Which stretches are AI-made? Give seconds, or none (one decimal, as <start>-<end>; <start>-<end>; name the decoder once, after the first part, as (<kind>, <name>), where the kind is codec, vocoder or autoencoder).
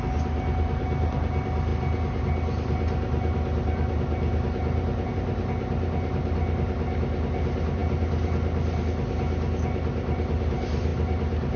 none